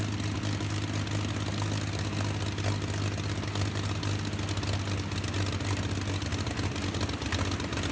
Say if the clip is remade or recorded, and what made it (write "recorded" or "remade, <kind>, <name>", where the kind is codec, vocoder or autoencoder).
recorded